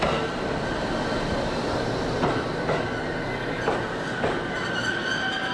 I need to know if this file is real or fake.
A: real